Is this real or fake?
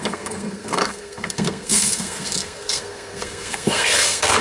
fake